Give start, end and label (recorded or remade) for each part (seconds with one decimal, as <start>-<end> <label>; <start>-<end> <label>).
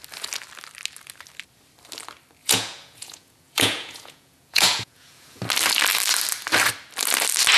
0.0-2.4 recorded; 2.4-5.4 remade; 5.4-7.6 recorded